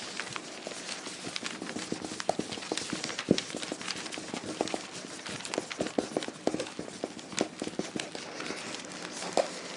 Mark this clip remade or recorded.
recorded